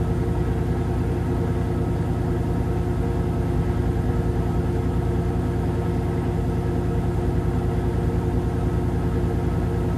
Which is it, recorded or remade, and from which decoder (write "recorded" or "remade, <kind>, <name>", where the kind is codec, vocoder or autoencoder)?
recorded